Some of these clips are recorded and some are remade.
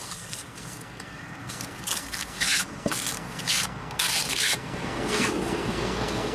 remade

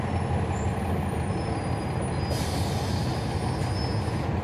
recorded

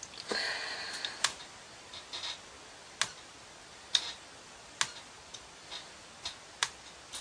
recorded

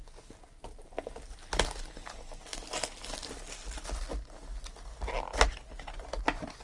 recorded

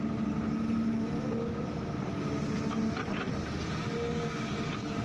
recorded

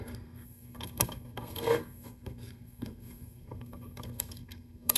remade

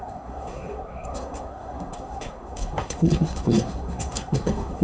remade